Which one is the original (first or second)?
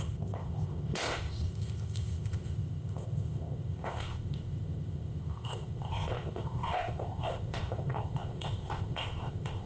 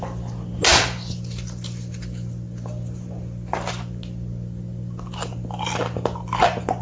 second